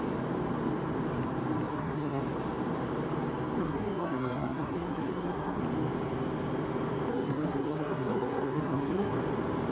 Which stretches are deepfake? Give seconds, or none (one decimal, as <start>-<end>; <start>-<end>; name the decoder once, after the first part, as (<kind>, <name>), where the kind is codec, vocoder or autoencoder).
1.7-2.2 (codec, SNAC); 3.6-5.6; 7.1-9.1